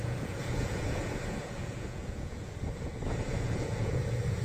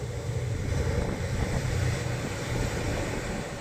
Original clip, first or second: second